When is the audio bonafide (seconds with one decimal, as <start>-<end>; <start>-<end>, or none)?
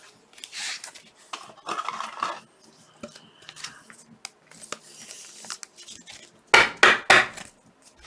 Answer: 0.0-8.1